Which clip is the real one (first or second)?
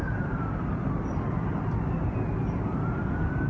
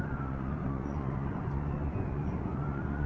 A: first